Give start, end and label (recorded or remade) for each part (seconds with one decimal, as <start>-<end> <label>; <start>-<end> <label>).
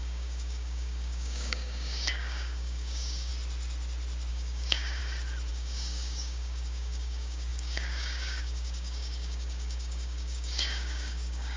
0.0-3.3 remade; 3.3-4.3 recorded; 4.3-5.0 remade; 5.0-5.5 recorded; 5.5-11.6 remade